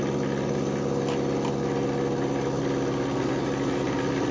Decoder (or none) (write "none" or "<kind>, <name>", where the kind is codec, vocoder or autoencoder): none